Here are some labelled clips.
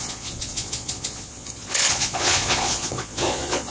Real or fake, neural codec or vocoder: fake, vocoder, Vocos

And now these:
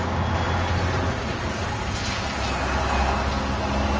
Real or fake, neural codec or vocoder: real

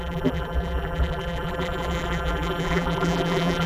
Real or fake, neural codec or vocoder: fake, vocoder, BigVGAN v2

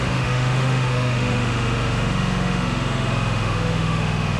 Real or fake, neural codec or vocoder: fake, autoencoder, DAC-VAE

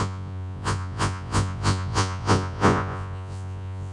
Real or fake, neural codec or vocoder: fake, vocoder, Vocos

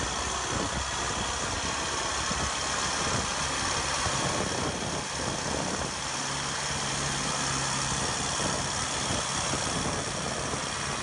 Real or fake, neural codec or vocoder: real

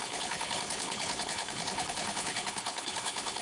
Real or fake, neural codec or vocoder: fake, codec, HILCodec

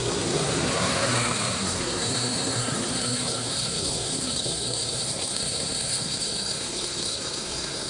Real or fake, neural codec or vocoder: fake, codec, SNAC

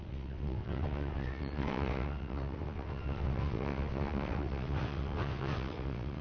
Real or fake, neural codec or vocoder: fake, vocoder, WaveNeXt